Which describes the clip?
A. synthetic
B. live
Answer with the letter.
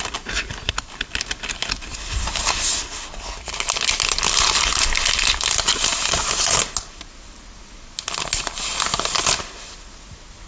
B